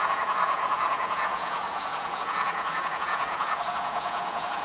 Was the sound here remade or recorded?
remade